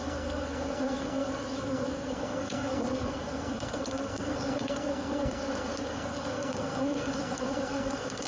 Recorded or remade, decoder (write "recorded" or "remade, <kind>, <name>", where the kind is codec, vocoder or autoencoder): remade, codec, SNAC